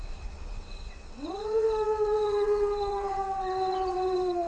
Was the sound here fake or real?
fake